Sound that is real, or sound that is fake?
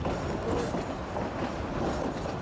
real